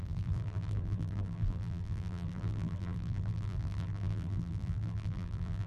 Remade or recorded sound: remade